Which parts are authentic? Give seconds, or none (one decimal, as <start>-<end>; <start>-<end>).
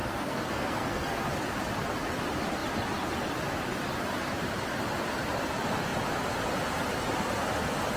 1.3-8.0